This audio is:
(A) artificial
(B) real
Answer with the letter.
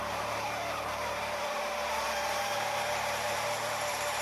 A